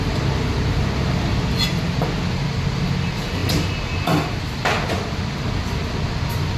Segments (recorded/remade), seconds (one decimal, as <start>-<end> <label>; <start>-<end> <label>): 0.0-6.6 recorded